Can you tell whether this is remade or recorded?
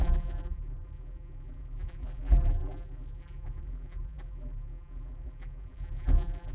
remade